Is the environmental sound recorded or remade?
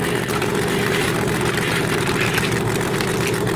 recorded